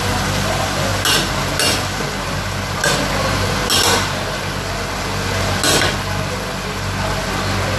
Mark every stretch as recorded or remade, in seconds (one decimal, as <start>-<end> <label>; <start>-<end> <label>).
0.0-7.8 recorded